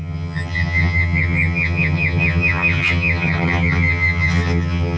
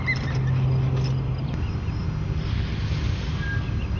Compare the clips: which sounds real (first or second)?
second